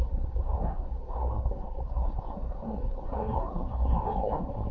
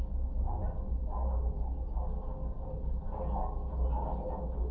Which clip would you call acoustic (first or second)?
second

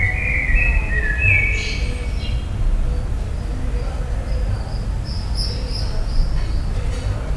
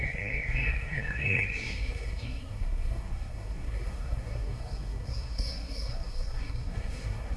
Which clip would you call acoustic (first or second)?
first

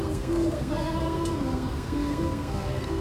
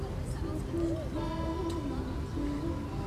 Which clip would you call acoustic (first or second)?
second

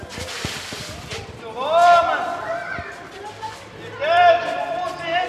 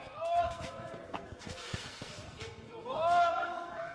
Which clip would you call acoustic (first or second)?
first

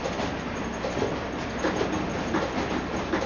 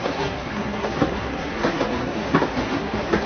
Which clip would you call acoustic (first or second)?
first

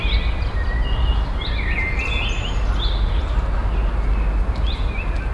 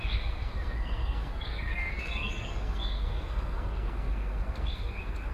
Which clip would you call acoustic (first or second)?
first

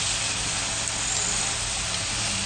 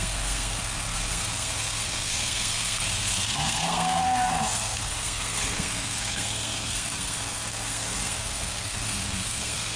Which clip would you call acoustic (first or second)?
first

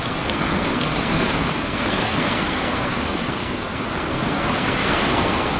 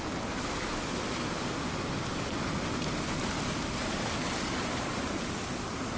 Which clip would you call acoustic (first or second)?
second